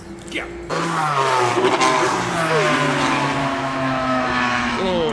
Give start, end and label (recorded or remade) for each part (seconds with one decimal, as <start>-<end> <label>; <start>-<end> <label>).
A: 0.0-3.4 recorded; 3.4-5.1 remade